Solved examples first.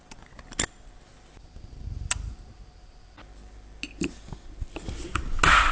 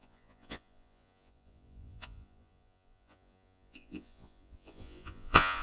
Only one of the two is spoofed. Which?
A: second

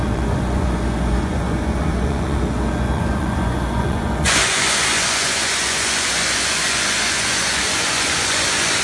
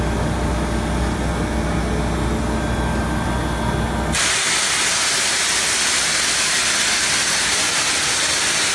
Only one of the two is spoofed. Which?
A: first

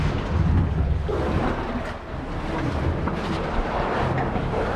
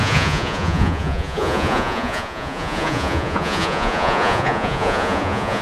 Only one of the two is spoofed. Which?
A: second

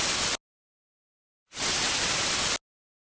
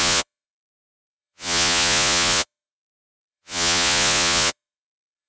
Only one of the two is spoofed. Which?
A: second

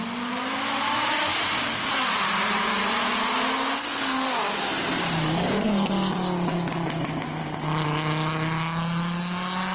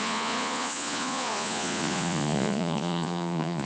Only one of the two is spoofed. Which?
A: second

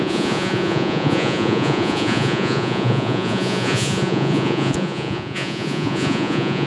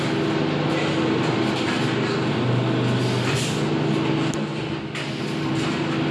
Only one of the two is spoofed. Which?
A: first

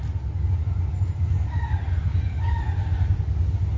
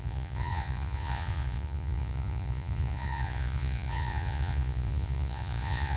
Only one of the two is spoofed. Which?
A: second